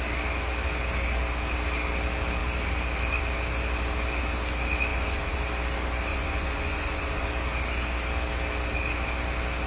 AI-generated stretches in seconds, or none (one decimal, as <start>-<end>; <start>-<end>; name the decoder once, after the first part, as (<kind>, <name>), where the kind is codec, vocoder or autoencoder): 4.9-5.4 (vocoder, Vocos); 6.1-7.3